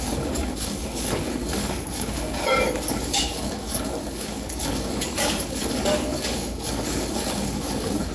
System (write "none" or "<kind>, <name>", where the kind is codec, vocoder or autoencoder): codec, DAC